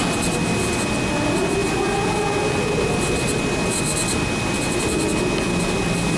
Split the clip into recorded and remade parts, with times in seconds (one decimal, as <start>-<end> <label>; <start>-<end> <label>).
0.0-6.2 recorded